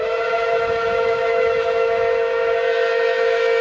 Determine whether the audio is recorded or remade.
remade